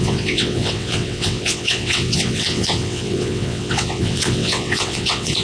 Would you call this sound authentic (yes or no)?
no